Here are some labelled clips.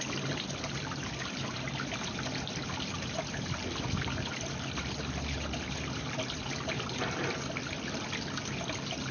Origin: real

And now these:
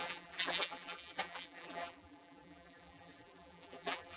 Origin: fake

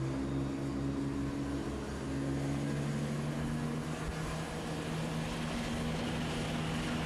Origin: real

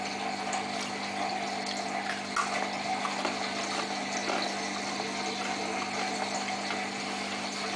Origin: real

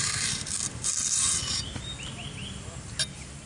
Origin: fake